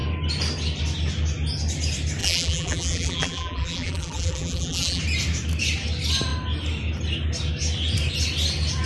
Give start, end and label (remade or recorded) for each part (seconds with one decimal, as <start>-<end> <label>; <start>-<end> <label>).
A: 0.0-2.2 recorded; 2.2-5.0 remade; 5.0-8.9 recorded